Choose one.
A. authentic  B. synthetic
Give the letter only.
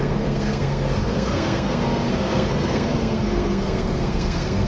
B